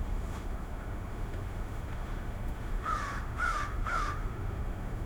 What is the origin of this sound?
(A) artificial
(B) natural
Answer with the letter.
A